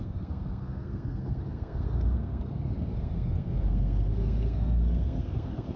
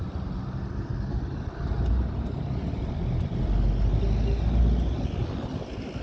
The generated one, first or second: first